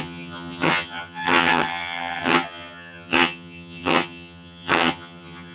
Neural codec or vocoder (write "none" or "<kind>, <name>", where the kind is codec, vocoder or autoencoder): vocoder, HiFi-GAN